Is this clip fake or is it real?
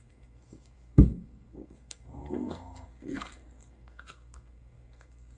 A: fake